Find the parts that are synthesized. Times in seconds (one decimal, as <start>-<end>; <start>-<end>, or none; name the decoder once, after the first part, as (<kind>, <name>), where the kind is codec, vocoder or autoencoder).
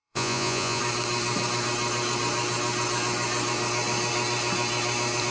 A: 0.0-0.8 (vocoder, Vocos)